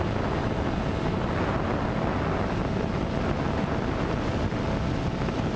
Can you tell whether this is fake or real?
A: real